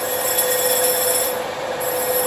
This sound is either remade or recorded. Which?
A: recorded